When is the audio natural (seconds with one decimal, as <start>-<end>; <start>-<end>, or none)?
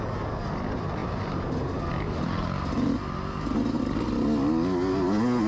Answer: 0.0-1.0; 1.8-5.5